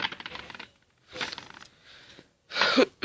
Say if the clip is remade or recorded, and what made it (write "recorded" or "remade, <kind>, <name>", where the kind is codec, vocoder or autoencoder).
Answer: recorded